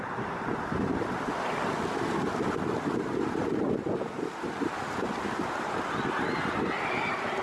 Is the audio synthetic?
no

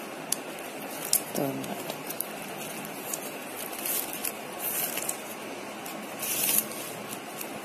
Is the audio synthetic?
no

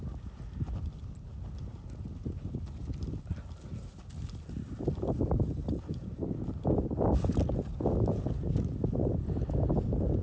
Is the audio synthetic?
no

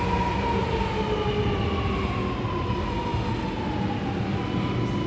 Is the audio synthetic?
no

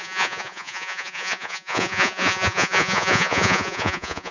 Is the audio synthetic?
yes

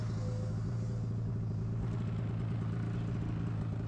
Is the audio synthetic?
no